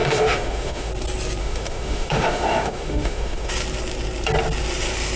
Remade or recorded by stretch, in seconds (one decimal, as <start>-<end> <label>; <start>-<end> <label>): 0.0-0.9 remade; 0.9-1.4 recorded; 1.4-3.5 remade; 3.5-5.2 recorded